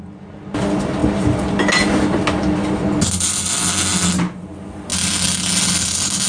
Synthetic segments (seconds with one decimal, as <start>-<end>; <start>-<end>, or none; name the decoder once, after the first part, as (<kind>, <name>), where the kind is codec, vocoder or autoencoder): none